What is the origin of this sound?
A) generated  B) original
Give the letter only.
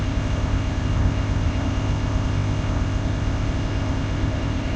A